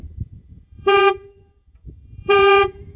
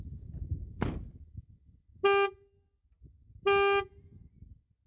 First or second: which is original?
second